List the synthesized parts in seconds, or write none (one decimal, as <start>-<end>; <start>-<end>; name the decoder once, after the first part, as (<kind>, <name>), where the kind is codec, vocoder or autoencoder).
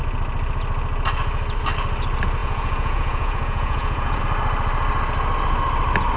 2.4-4.2 (vocoder, Vocos)